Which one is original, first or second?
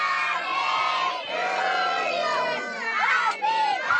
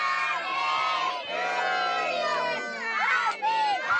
second